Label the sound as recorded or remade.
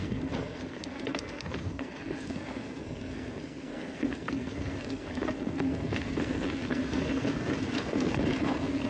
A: remade